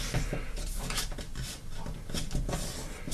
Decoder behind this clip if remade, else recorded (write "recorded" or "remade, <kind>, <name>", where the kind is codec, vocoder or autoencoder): recorded